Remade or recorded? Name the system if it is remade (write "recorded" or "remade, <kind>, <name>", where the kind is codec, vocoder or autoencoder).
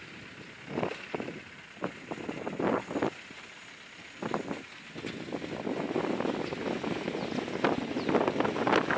recorded